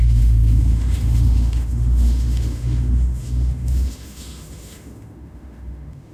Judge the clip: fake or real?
fake